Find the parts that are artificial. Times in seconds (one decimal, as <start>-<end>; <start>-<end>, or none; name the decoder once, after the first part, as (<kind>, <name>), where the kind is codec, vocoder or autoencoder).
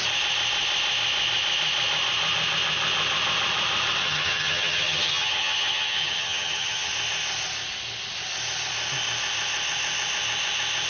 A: 4.0-6.9 (vocoder, HiFi-GAN)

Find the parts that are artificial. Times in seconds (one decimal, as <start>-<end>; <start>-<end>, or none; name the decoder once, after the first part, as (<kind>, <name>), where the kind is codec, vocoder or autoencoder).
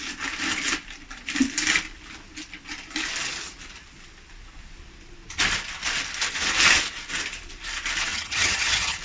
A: 8.1-9.0 (vocoder, HiFi-GAN)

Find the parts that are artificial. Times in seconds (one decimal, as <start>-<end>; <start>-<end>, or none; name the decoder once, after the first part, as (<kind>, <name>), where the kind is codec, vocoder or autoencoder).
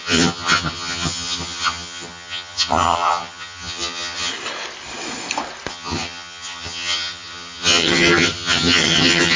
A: 0.0-4.3 (vocoder, HiFi-GAN); 5.7-9.4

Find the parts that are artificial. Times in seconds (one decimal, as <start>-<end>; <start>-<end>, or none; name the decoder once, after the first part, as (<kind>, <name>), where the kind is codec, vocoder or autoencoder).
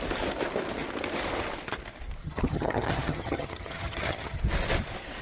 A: 2.2-4.4 (vocoder, HiFi-GAN)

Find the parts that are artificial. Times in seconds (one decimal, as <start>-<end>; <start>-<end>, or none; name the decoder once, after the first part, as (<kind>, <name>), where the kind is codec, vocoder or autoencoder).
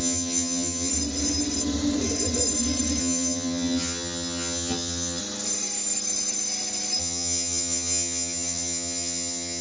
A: 0.0-0.9 (vocoder, HiFi-GAN); 3.0-5.2; 7.0-9.6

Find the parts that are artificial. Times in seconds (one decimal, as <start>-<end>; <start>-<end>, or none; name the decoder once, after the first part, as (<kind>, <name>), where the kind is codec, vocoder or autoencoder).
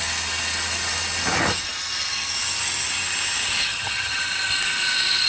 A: 3.7-4.2 (vocoder, HiFi-GAN)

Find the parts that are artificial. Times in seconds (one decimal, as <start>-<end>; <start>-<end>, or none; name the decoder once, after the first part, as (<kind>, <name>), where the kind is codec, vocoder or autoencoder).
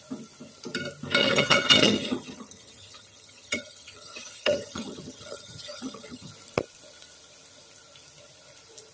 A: 1.2-6.3 (vocoder, HiFi-GAN)